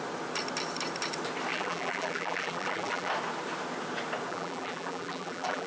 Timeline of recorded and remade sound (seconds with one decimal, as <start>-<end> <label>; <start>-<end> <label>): 0.0-1.5 recorded; 1.5-3.1 remade; 3.1-4.3 recorded; 4.3-5.7 remade